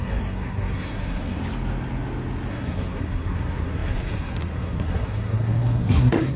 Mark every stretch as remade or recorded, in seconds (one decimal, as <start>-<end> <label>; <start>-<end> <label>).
0.0-1.4 remade; 1.4-2.5 recorded; 2.5-6.4 remade